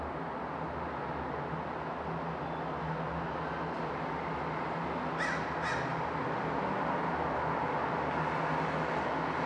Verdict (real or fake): real